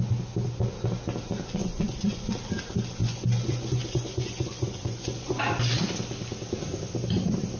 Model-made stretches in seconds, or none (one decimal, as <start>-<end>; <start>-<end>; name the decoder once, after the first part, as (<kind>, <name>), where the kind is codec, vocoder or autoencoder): 1.6-2.3 (vocoder, Vocos); 3.0-5.4